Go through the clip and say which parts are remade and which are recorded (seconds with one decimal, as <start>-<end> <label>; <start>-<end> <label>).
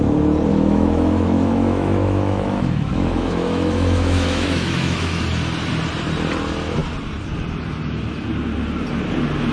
0.0-0.5 recorded; 0.5-5.2 remade; 5.2-9.5 recorded